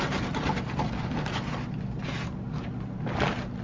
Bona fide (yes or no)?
yes